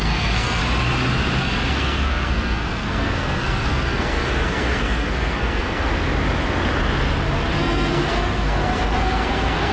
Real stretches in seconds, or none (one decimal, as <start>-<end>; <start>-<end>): 0.6-1.4; 5.9-7.5